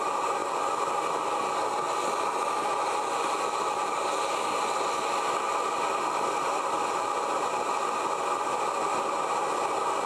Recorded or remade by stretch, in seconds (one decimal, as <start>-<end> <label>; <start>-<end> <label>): 0.0-10.1 recorded